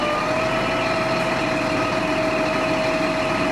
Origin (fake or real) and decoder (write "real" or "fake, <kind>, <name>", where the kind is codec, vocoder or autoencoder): real